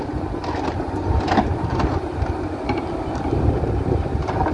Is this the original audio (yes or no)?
yes